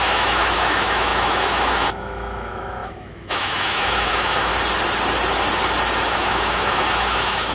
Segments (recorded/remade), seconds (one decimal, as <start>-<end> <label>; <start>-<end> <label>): 0.0-4.5 remade; 4.5-6.1 recorded; 6.1-7.5 remade